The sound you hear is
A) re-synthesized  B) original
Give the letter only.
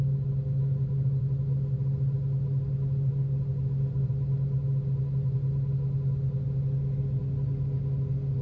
B